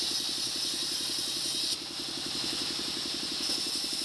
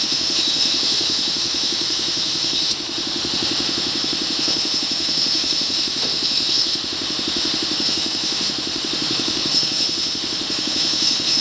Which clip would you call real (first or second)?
first